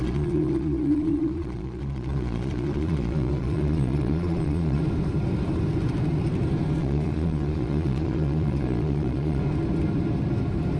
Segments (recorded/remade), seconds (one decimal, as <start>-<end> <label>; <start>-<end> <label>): 0.0-4.8 remade; 4.8-6.8 recorded; 6.8-9.4 remade; 9.4-10.8 recorded